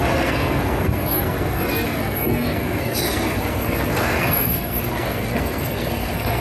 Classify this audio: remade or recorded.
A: remade